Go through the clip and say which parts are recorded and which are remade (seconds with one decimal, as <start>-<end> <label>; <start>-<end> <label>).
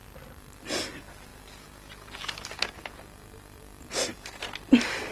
0.0-4.1 recorded; 4.1-5.1 remade